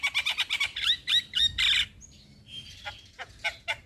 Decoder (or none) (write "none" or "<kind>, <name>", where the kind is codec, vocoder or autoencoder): none